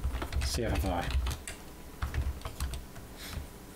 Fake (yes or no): no